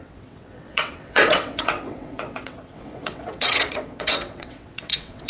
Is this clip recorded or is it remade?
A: remade